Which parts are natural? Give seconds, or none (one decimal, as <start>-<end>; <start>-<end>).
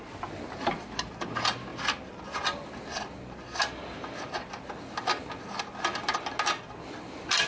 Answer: 0.0-7.5